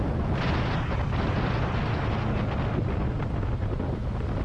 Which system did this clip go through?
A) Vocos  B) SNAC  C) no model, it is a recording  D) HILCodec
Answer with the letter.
C